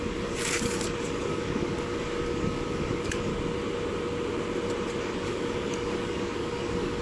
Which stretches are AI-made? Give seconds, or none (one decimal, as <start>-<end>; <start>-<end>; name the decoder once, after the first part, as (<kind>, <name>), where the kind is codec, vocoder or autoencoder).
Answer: 0.0-3.3 (codec, DAC); 5.0-7.0